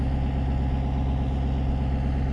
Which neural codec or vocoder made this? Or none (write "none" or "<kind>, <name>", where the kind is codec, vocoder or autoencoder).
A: none